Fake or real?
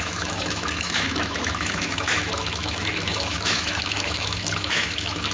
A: fake